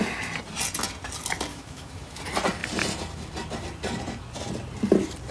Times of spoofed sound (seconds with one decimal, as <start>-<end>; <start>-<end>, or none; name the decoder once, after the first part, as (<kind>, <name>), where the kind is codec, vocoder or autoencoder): 1.5-2.2 (autoencoder, DAC-VAE)